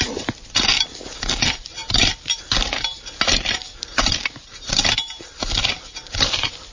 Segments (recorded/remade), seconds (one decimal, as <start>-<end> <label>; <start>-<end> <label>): 0.0-6.7 recorded